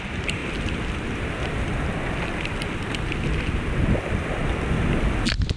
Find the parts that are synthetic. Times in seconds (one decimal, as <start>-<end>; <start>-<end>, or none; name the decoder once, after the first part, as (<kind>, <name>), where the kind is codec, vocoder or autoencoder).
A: none